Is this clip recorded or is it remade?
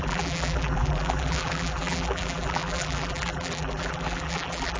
remade